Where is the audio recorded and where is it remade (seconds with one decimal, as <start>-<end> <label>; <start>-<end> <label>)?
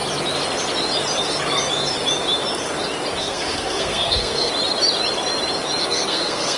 0.0-3.2 recorded; 3.2-4.5 remade; 4.5-5.8 recorded; 5.8-6.6 remade